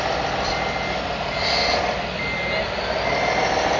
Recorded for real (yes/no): yes